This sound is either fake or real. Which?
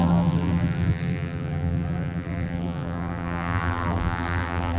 fake